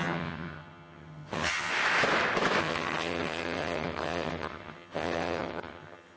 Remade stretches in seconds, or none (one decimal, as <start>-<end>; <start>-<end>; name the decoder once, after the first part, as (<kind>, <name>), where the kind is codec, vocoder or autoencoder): 0.0-1.7 (vocoder, HiFi-GAN); 2.6-6.2